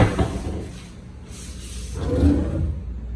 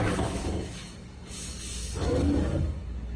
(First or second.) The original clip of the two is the first